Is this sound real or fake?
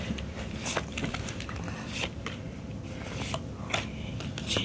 real